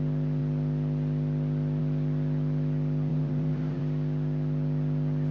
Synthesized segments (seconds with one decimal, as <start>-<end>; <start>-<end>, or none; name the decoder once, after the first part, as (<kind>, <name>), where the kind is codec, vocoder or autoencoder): 3.1-3.8 (vocoder, BigVGAN v2)